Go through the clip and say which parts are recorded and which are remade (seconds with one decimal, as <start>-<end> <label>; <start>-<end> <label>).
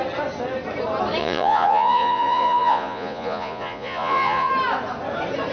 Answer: 0.0-1.2 recorded; 1.2-4.5 remade; 4.5-5.5 recorded